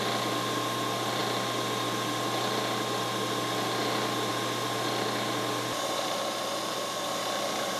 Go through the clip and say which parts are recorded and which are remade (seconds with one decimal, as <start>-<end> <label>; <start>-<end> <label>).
0.0-7.8 recorded